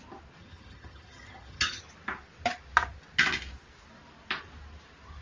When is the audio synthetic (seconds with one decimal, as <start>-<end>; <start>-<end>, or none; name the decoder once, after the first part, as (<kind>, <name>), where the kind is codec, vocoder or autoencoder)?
0.4-1.8 (vocoder, HiFi-GAN)